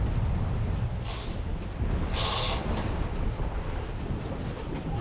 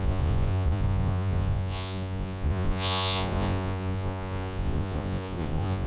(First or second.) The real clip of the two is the first